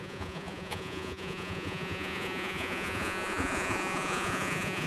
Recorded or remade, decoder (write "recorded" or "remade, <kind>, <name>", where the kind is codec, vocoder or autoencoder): remade, vocoder, Vocos